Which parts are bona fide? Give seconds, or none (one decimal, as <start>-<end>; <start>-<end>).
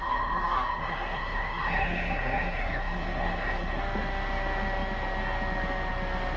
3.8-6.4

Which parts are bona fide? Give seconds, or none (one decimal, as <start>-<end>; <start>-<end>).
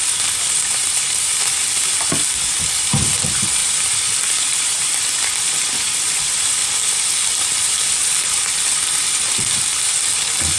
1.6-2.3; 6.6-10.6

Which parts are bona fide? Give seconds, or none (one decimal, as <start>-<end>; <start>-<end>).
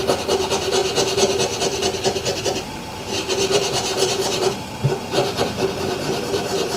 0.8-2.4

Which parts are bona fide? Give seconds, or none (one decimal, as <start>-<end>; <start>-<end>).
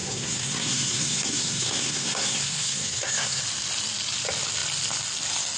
3.4-5.6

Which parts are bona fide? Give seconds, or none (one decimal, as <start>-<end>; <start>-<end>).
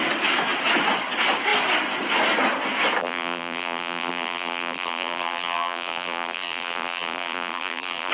0.0-3.0